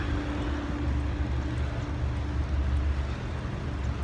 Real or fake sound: real